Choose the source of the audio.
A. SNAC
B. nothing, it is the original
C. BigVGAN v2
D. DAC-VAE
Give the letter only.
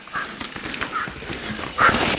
B